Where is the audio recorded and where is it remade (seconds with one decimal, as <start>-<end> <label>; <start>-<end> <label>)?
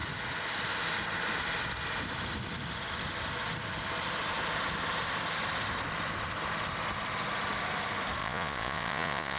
0.0-8.2 recorded; 8.2-9.4 remade